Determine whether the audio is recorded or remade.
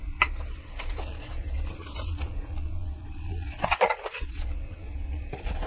remade